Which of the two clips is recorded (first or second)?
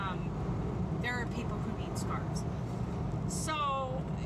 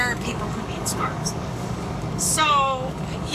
first